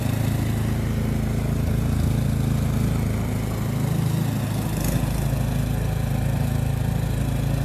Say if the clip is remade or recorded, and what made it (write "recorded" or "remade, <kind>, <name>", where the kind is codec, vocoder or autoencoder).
recorded